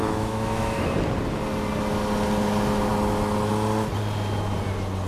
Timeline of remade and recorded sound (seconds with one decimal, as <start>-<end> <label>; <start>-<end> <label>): 0.0-0.9 remade; 0.9-5.1 recorded